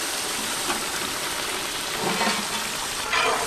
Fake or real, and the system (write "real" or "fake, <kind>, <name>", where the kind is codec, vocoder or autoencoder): real